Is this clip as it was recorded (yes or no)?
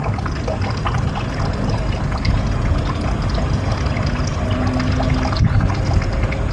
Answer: yes